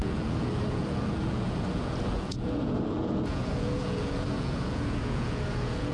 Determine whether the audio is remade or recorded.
remade